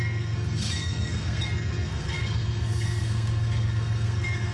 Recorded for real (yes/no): no